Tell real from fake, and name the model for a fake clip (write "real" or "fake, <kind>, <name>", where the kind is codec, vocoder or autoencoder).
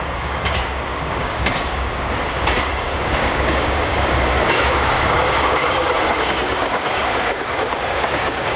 fake, codec, DAC